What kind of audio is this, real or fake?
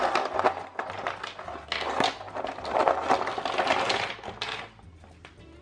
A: real